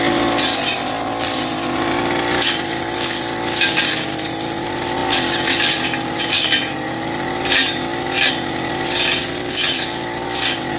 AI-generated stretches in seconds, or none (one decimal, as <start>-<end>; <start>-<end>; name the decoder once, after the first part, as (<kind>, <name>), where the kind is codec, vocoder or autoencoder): none